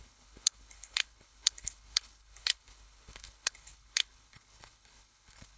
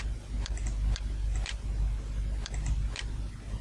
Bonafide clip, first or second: second